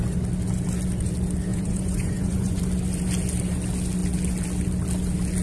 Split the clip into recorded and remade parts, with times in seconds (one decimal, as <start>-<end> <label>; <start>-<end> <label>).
0.0-1.5 recorded; 1.5-2.6 remade; 2.6-5.4 recorded